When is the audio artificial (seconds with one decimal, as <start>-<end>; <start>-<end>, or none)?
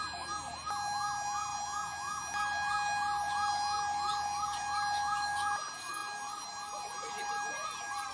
none